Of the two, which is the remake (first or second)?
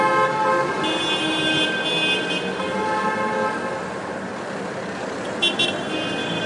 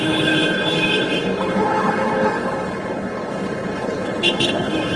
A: second